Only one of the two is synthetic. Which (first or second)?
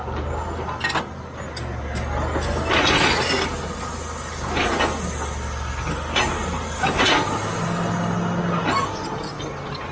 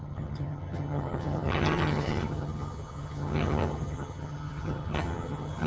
second